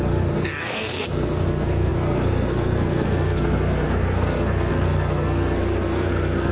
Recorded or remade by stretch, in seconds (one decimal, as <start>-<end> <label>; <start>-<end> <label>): 0.0-6.5 remade